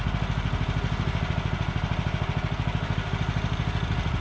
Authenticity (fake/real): real